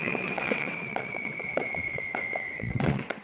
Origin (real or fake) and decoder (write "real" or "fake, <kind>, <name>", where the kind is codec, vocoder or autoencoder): fake, vocoder, WaveNeXt